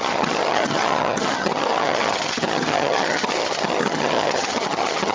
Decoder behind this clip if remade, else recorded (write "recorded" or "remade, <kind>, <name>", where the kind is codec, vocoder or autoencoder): remade, vocoder, HiFi-GAN